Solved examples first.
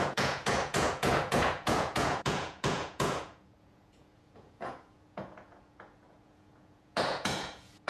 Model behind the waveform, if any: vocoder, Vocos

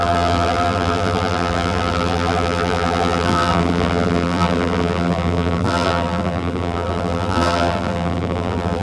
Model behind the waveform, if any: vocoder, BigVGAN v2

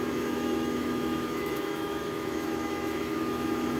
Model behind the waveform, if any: autoencoder, DAC-VAE